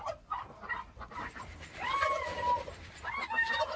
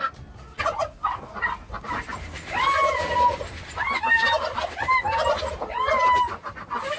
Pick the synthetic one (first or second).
first